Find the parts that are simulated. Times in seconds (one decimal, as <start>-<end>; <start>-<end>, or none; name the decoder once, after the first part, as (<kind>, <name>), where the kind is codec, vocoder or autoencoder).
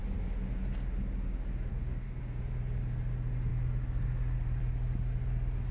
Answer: 1.7-2.2 (codec, DAC)